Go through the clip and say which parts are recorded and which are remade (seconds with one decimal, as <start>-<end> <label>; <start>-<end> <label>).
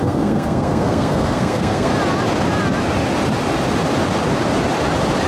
0.0-1.9 remade; 1.9-5.3 recorded